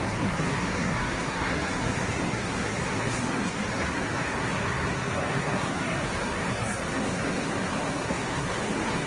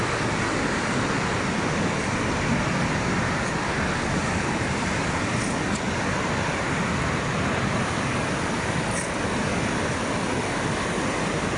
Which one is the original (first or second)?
second